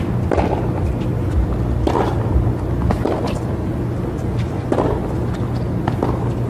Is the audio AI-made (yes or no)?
no